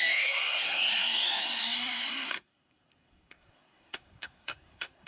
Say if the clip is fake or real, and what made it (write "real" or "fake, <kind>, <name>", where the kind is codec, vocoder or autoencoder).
fake, codec, SNAC